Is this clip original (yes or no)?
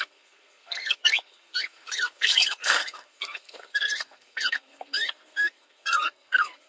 no